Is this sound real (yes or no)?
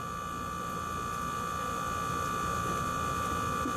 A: yes